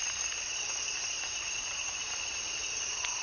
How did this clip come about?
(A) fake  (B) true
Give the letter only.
B